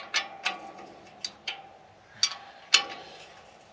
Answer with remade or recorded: recorded